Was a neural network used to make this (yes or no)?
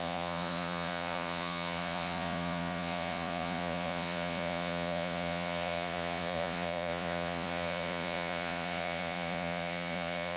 yes